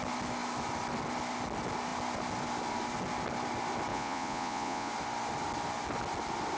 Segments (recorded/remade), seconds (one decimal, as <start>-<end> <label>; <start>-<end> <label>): 0.0-3.9 recorded; 3.9-4.9 remade; 4.9-6.6 recorded